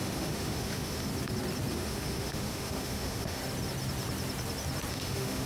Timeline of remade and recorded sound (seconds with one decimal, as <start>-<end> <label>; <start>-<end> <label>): 0.0-1.1 remade; 1.1-1.7 recorded; 1.7-3.4 remade; 3.4-4.9 recorded; 4.9-5.5 remade